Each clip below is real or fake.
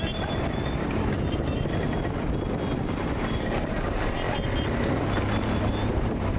real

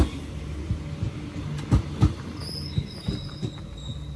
real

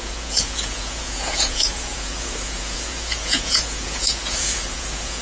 fake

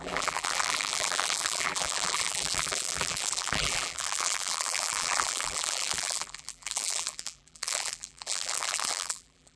fake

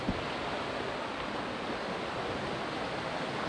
real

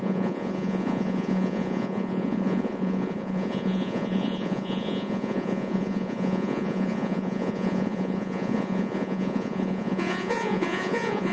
fake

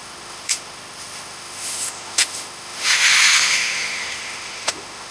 fake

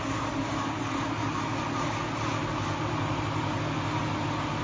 real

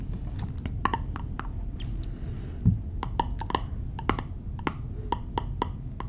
real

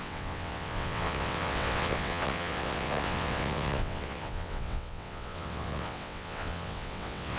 fake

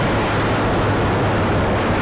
real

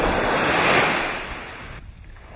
real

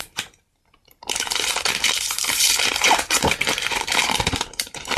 fake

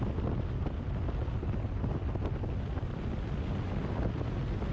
real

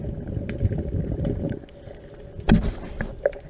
real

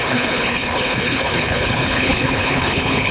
fake